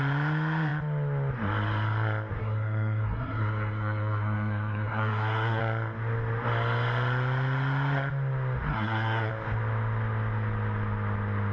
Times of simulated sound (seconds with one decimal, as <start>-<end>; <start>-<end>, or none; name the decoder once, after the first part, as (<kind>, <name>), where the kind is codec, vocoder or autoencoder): 2.4-5.6 (codec, SNAC); 8.7-9.3